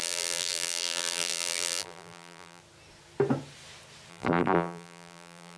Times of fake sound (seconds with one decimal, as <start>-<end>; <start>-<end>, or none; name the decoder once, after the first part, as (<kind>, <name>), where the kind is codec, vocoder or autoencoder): 0.0-2.6 (vocoder, BigVGAN v2); 4.1-5.6